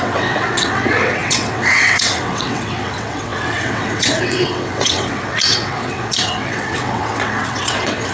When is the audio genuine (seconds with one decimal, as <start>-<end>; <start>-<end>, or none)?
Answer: none

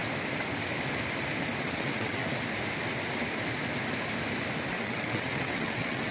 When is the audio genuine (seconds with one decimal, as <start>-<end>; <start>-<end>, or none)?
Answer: 0.0-1.6; 2.2-4.7

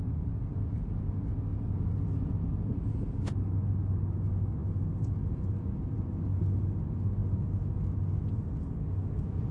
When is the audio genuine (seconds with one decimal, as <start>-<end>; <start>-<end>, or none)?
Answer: 0.0-9.5

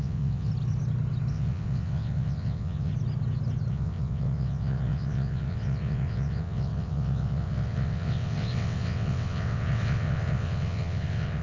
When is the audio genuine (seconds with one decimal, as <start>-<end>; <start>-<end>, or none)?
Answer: 0.5-1.3; 2.9-3.7

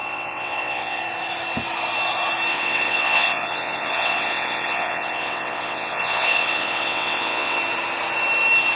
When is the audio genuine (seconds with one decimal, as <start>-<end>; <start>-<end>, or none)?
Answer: 1.0-2.5; 7.6-8.8